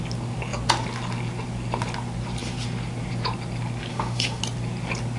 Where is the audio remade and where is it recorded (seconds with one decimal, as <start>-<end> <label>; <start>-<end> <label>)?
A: 0.0-3.9 recorded; 3.9-4.4 remade; 4.4-5.2 recorded